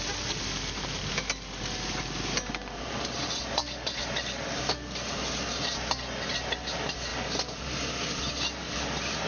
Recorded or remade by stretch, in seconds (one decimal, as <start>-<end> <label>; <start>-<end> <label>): 0.0-9.3 recorded